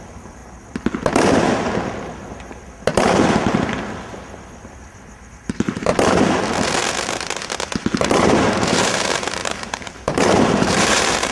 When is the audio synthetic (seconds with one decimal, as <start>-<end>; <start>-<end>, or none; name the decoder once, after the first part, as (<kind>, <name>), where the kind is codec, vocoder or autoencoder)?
0.0-0.4 (vocoder, BigVGAN v2); 5.3-5.9; 8.0-11.3